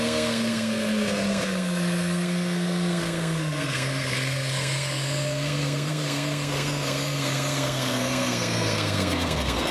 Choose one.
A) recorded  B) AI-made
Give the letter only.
B